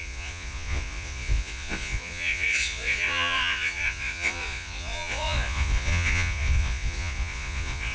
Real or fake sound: fake